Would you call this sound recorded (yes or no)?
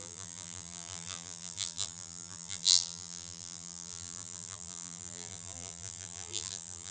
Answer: no